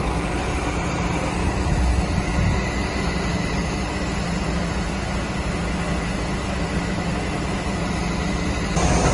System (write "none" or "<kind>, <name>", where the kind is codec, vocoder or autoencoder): none